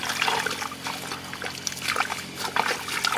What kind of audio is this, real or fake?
real